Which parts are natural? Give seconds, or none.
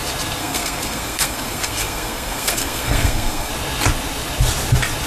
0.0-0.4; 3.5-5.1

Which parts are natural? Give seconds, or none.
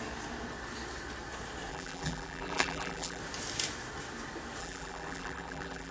0.0-1.7; 3.2-4.6